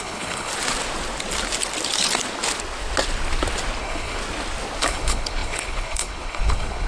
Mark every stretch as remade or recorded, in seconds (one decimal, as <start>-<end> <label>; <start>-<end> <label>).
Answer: 0.0-0.5 remade; 0.5-3.8 recorded; 3.8-4.2 remade; 4.2-4.8 recorded; 4.8-6.9 remade